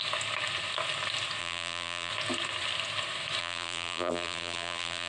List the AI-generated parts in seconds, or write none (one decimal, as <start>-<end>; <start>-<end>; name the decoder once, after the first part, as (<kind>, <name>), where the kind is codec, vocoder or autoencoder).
1.4-2.1 (vocoder, BigVGAN v2); 3.4-5.1